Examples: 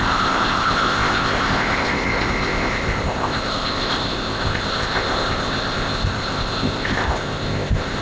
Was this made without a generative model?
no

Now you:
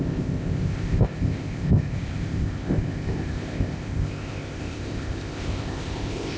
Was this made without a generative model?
no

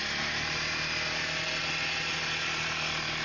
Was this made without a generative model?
yes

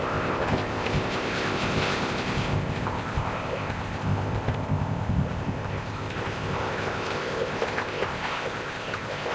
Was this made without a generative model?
no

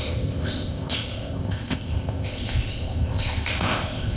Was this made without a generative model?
no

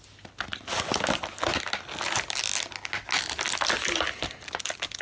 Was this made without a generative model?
yes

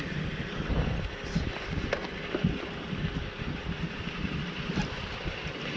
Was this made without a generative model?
yes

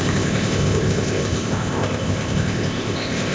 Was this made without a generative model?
no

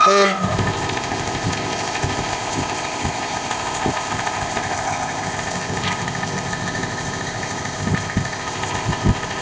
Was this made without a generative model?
no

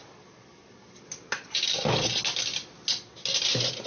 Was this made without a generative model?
yes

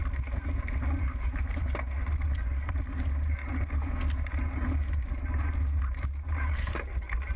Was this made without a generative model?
yes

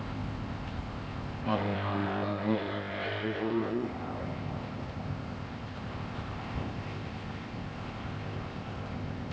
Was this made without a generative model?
no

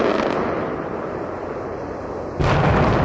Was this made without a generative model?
yes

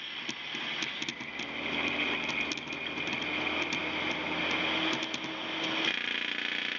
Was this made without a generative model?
yes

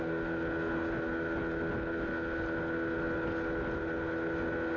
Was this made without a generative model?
yes